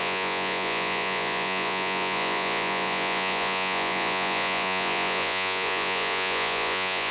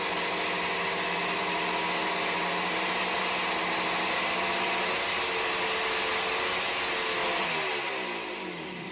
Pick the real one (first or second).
second